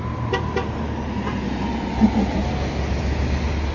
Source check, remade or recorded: recorded